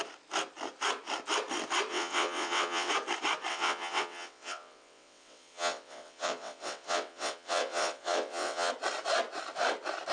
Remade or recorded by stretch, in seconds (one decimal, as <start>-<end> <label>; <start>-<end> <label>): 0.0-1.9 recorded; 1.9-2.9 remade; 2.9-3.5 recorded; 3.5-8.7 remade; 8.7-10.1 recorded